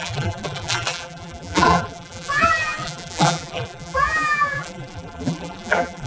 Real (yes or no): no